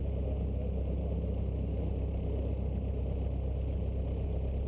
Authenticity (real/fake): real